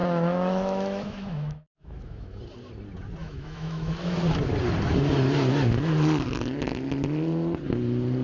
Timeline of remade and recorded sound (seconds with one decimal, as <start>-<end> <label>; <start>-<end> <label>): 0.0-2.4 remade; 2.4-3.2 recorded; 3.2-4.2 remade; 4.2-8.2 recorded

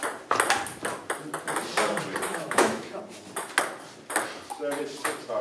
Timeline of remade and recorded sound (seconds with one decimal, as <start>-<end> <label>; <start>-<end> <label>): 0.0-2.3 recorded; 2.3-3.0 remade; 3.0-5.4 recorded

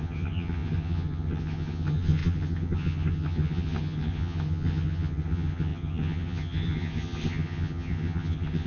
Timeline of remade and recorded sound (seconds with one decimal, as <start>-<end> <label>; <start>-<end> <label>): 0.0-8.7 remade

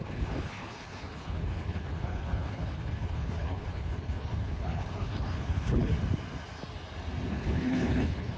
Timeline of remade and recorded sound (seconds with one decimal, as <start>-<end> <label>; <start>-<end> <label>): 0.0-5.9 remade; 5.9-7.3 recorded; 7.3-8.4 remade

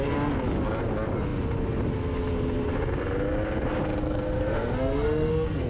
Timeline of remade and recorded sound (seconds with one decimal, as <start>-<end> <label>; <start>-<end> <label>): 0.0-4.0 recorded; 4.0-5.7 remade